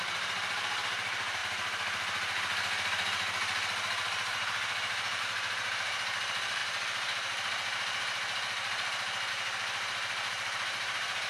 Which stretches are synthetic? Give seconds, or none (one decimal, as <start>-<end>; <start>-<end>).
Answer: 0.0-1.4; 5.2-6.6; 9.3-11.3